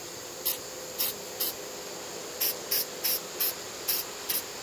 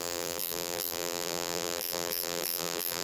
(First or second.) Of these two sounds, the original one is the first